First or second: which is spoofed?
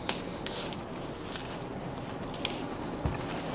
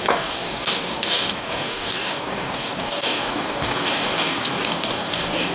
second